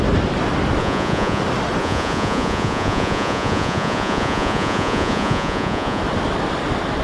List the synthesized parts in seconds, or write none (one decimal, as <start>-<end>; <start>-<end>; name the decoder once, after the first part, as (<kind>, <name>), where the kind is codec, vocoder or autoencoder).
0.8-1.4 (vocoder, Vocos); 1.8-6.0